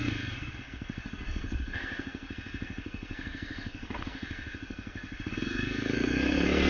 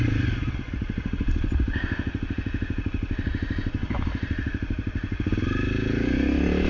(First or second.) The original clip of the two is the second